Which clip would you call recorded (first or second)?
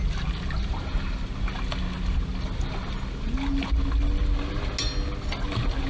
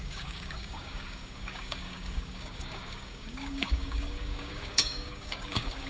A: first